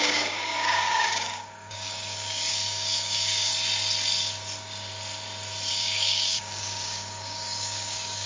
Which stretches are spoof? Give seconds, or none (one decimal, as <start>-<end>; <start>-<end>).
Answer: 0.0-3.5; 5.7-8.3